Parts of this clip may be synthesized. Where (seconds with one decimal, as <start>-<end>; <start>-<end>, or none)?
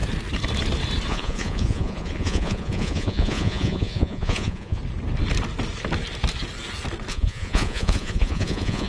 1.1-4.8; 7.1-8.9